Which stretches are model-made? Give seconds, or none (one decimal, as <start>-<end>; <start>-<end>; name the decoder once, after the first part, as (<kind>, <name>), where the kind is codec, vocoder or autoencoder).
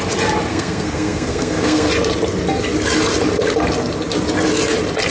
0.5-1.9 (codec, SNAC)